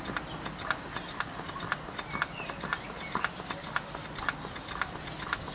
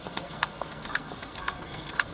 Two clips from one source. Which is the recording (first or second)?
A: first